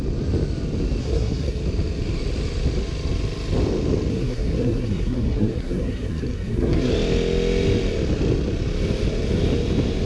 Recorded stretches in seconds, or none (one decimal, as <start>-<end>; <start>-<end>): 0.0-1.0; 1.6-4.1; 6.9-10.1